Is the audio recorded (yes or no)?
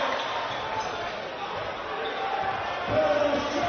yes